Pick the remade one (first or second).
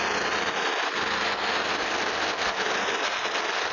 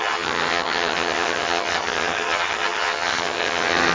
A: second